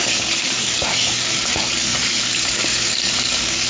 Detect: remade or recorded remade